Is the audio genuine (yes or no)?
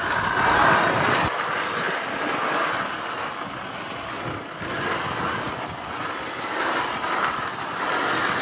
yes